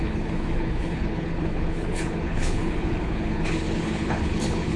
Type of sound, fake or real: fake